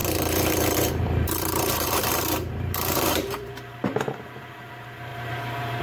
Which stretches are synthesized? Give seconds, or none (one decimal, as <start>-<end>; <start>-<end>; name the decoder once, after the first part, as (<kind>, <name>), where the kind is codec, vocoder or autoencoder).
0.0-3.5 (vocoder, BigVGAN v2)

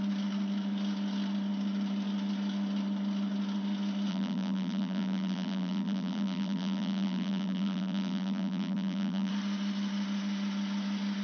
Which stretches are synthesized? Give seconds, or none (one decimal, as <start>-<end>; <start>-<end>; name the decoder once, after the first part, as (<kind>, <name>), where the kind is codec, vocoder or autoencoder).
4.1-9.3 (vocoder, BigVGAN v2)

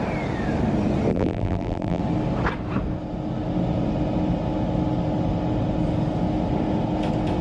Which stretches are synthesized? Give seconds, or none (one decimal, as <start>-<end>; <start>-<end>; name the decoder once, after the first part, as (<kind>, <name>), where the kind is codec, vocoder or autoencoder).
1.1-2.0 (vocoder, BigVGAN v2)

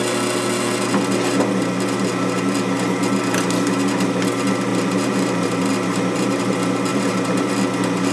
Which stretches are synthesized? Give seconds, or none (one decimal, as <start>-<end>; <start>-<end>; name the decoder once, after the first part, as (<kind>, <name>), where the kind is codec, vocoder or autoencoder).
4.7-6.4 (vocoder, BigVGAN v2); 6.9-7.5

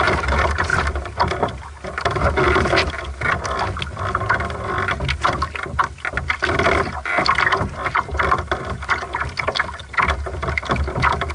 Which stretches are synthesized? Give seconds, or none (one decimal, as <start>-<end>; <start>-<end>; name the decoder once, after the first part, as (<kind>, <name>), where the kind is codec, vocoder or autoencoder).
none

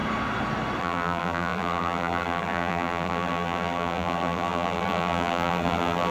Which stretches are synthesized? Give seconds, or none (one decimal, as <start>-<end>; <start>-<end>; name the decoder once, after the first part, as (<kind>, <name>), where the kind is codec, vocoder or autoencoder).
0.8-6.1 (vocoder, BigVGAN v2)

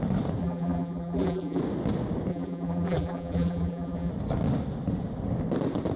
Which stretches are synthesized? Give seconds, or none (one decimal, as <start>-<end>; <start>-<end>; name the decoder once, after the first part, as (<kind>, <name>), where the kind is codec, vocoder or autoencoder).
0.4-1.6 (vocoder, BigVGAN v2); 2.3-4.1

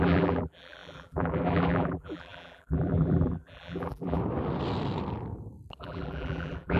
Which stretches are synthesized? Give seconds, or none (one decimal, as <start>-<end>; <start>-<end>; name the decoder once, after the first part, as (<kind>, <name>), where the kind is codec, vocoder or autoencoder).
0.0-4.2 (vocoder, BigVGAN v2); 5.8-6.8